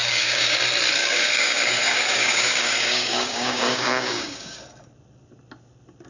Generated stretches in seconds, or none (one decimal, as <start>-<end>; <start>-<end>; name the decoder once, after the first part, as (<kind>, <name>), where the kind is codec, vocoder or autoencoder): 0.0-0.6 (codec, DAC); 1.0-4.6

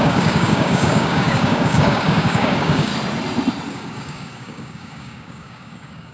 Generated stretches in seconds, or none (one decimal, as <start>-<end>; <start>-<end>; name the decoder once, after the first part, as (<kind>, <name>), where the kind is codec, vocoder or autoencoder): 0.0-2.9 (codec, DAC); 3.7-6.1